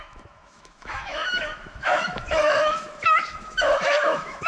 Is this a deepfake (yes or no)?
yes